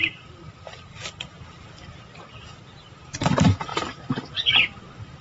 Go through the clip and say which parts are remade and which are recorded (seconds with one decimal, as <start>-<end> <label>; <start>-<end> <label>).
0.0-5.2 remade